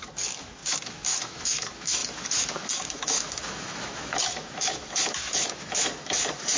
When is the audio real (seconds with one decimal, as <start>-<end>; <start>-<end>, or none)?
none